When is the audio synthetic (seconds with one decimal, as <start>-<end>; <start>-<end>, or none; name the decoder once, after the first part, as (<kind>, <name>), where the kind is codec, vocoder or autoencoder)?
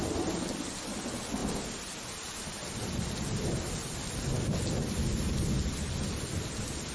1.4-5.0 (vocoder, BigVGAN v2)